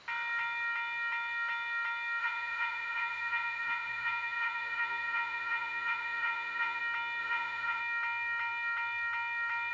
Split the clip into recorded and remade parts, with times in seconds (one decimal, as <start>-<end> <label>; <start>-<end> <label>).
0.0-2.2 recorded; 2.2-6.8 remade; 6.8-7.2 recorded; 7.2-7.8 remade; 7.8-9.7 recorded